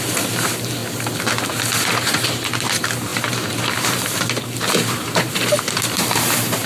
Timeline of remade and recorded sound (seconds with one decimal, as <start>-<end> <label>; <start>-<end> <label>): 0.0-0.8 remade; 0.8-1.8 recorded; 1.8-6.7 remade